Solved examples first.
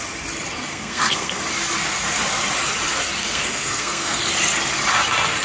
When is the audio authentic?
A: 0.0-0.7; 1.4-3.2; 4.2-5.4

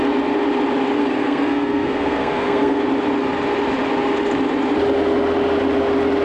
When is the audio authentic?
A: 0.0-1.0; 2.8-6.2

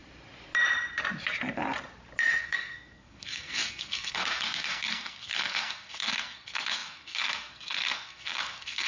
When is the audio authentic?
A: 0.0-2.4

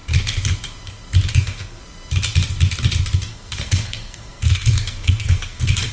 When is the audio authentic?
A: 0.0-1.3; 1.8-3.2

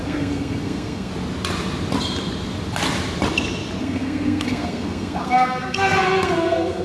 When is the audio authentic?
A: 1.1-3.8